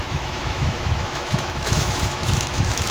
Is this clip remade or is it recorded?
remade